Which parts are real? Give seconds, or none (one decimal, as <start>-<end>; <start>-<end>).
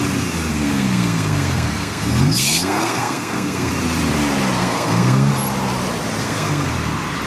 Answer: 0.0-0.5; 3.7-4.6; 5.3-6.2; 6.7-7.3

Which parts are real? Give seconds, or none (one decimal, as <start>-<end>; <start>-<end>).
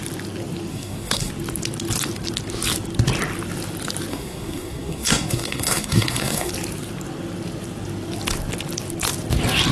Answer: 0.0-0.7; 1.3-4.1; 6.5-9.7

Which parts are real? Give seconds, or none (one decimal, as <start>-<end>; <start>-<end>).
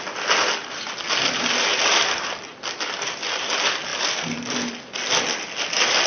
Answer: 0.0-3.9; 4.7-6.1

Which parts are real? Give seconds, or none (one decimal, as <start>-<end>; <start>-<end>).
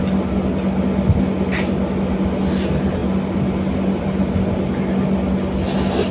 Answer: 0.0-6.1